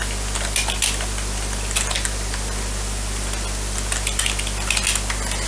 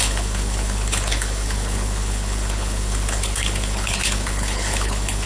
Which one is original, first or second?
first